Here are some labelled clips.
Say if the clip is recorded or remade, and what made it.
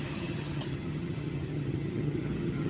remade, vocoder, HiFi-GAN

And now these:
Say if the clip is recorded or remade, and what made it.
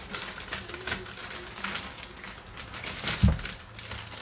recorded